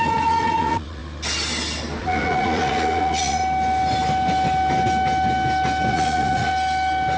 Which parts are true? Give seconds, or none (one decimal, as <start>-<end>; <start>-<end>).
1.0-2.0; 3.4-5.9; 6.5-7.2